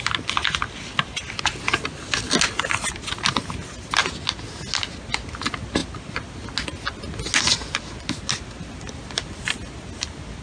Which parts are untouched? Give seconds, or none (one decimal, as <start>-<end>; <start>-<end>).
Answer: 0.0-10.4